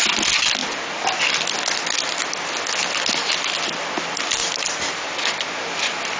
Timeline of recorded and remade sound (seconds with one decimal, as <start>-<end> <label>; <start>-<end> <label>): 0.0-4.4 recorded; 4.4-5.2 remade; 5.2-6.2 recorded

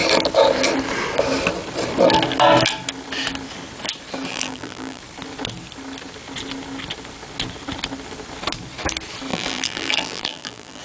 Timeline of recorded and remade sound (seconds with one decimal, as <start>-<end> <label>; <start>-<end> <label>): 0.0-4.3 recorded; 4.3-5.0 remade; 5.0-9.3 recorded; 9.3-10.8 remade

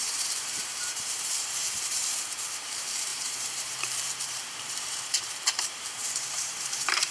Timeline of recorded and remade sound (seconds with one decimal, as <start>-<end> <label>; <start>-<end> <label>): 0.0-7.1 remade